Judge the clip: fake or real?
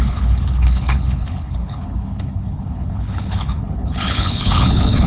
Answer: fake